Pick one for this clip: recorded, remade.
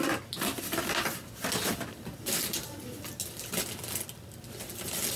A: recorded